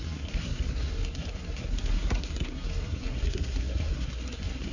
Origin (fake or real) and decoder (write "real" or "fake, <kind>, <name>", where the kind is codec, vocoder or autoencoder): fake, codec, SNAC